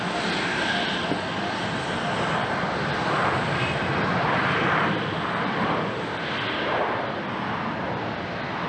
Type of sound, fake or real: real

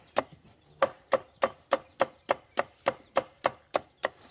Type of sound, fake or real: real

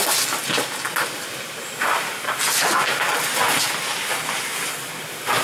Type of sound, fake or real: real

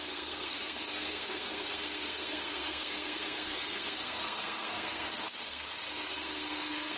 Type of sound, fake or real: fake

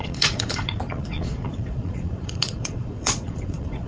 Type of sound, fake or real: fake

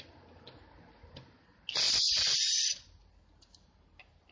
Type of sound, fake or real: real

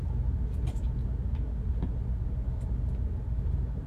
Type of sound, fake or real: real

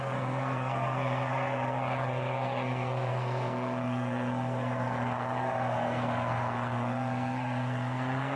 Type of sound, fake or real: fake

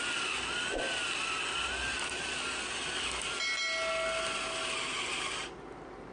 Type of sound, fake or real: real